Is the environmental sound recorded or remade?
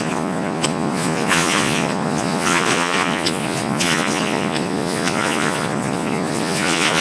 remade